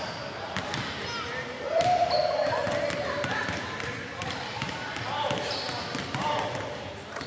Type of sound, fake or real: real